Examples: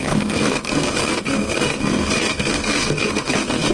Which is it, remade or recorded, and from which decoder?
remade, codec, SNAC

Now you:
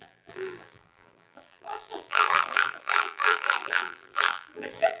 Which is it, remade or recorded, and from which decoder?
remade, vocoder, BigVGAN v2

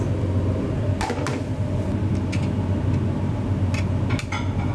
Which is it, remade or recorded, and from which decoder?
recorded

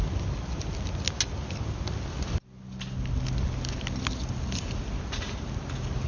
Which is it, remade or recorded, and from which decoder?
recorded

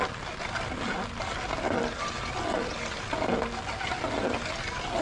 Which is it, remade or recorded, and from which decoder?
recorded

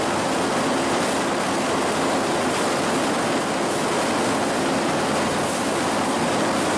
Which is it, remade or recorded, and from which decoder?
recorded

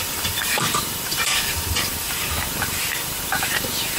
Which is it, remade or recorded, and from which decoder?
remade, vocoder, BigVGAN v2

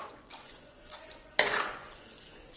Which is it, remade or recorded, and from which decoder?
remade, vocoder, Vocos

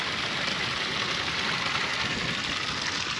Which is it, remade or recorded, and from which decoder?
recorded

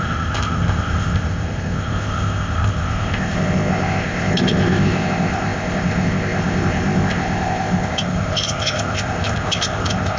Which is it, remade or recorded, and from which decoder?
remade, codec, ZipCodec